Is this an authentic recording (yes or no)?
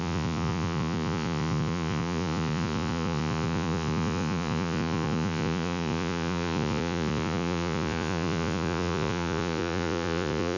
no